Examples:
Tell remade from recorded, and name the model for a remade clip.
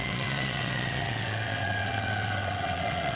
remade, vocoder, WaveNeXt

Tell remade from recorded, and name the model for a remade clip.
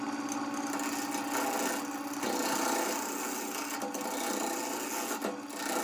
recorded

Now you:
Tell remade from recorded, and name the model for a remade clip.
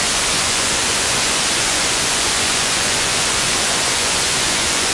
remade, vocoder, Vocos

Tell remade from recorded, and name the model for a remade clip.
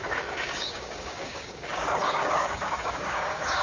remade, codec, DAC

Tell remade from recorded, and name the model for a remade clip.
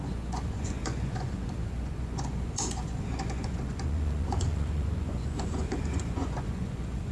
remade, vocoder, Vocos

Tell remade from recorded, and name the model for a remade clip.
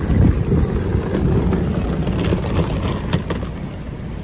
recorded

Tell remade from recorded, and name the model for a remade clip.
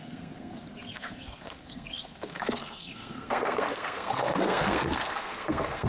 remade, codec, SNAC